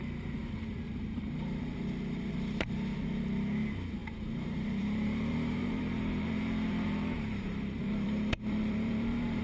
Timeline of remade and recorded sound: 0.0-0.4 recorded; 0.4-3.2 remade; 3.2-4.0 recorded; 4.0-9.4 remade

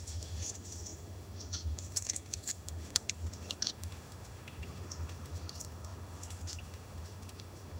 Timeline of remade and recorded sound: 0.0-7.8 remade

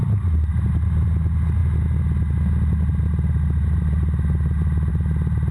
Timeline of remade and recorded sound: 0.0-5.5 recorded

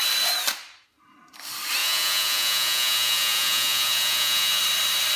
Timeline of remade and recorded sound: 0.0-1.8 recorded; 1.8-4.6 remade; 4.6-5.2 recorded

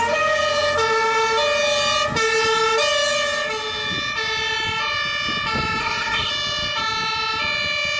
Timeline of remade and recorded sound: 0.0-5.8 recorded; 5.8-6.3 remade; 6.3-8.0 recorded

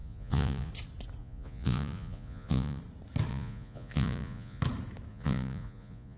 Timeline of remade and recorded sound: 0.0-0.7 remade; 0.7-1.2 recorded; 1.2-2.8 remade; 2.8-3.3 recorded; 3.3-4.6 remade; 4.6-5.1 recorded; 5.1-6.2 remade